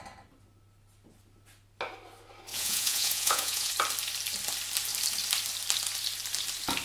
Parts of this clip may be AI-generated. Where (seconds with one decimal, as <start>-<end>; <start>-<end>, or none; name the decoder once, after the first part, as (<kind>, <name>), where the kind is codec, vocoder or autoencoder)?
2.5-3.7 (vocoder, Vocos)